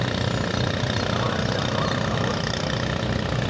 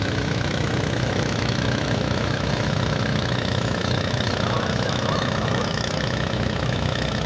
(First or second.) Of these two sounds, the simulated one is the second